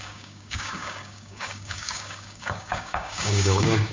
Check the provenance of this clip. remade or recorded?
remade